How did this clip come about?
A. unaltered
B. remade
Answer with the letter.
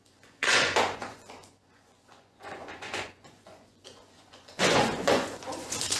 B